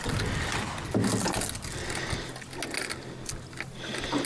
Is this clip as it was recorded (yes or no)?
yes